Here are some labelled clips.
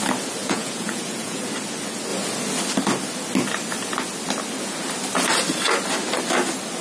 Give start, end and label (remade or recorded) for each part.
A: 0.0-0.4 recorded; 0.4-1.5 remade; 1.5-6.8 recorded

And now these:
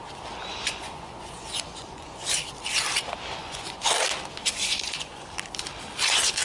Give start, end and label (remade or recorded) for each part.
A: 0.0-0.5 recorded; 0.5-2.3 remade; 2.3-3.4 recorded; 3.4-3.9 remade; 3.9-4.4 recorded; 4.4-5.3 remade; 5.3-6.4 recorded

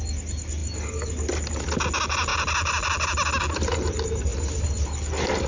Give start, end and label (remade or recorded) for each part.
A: 0.0-5.5 recorded

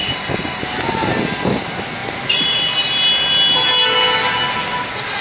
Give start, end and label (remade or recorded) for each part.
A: 0.0-0.6 remade; 0.6-5.2 recorded

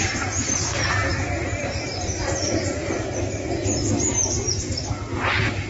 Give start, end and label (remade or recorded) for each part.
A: 0.0-1.1 recorded; 1.1-3.5 remade; 3.5-4.4 recorded; 4.4-4.9 remade; 4.9-5.7 recorded

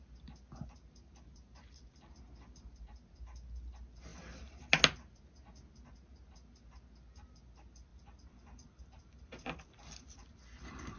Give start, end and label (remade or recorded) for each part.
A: 0.0-4.1 recorded; 4.1-4.7 remade; 4.7-7.9 recorded; 7.9-11.0 remade

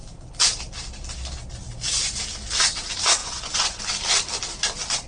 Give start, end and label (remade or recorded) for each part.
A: 0.0-3.2 recorded; 3.2-3.8 remade; 3.8-5.1 recorded